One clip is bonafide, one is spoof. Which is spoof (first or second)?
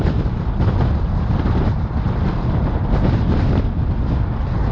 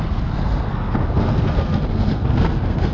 second